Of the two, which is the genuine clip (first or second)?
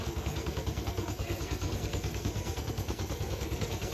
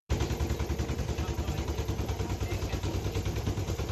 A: second